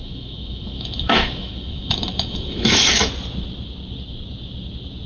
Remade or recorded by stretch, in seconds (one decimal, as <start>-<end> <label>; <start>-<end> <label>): 0.0-3.1 remade; 3.1-5.1 recorded